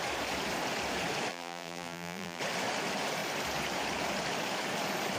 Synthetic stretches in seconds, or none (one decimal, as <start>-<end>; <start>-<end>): 1.3-2.4